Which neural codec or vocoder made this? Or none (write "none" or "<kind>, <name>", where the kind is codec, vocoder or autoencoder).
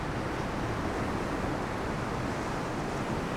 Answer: none